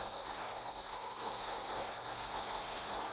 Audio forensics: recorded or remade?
remade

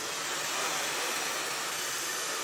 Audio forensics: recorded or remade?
recorded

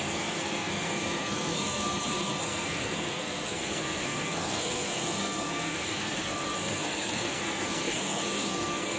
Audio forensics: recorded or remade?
remade